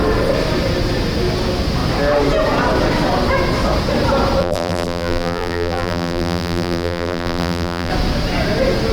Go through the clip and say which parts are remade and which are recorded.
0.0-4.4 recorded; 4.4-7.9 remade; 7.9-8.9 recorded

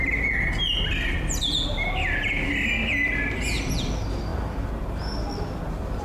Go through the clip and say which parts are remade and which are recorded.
0.0-6.0 recorded

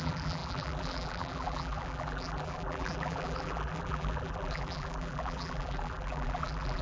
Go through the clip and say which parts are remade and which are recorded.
0.0-6.8 remade